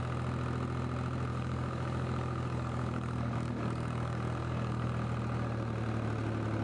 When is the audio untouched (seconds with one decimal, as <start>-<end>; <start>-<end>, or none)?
0.0-1.3; 4.9-6.6